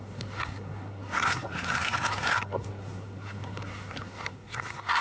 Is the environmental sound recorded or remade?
remade